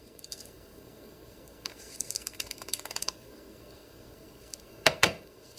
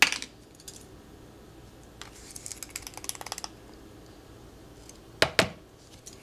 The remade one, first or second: first